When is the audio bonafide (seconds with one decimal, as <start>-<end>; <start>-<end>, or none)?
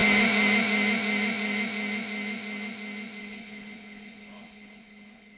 0.0-3.2